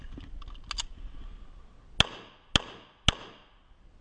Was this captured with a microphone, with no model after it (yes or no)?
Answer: yes